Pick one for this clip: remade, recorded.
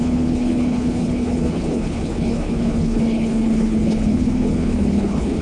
remade